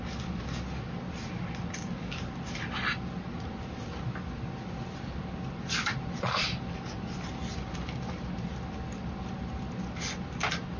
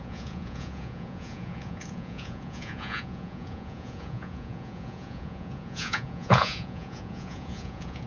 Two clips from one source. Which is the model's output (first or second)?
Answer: second